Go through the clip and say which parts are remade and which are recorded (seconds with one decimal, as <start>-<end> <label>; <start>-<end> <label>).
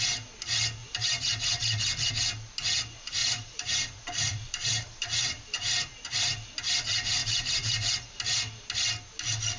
0.0-0.8 recorded; 0.8-2.1 remade; 2.1-3.2 recorded; 3.2-5.9 remade; 5.9-7.2 recorded; 7.2-8.2 remade; 8.2-9.6 recorded